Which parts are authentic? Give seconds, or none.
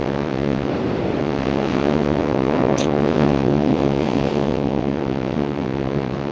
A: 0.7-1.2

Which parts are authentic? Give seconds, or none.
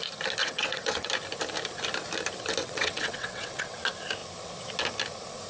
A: 0.0-0.4; 1.1-2.6; 3.8-5.5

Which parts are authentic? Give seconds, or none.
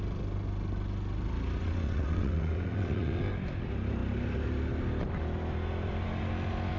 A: 0.0-1.6; 3.2-6.8